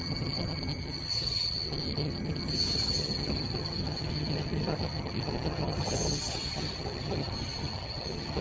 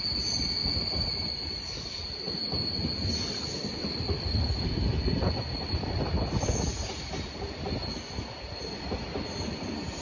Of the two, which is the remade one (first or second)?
first